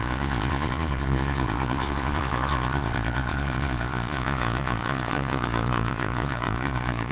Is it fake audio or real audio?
fake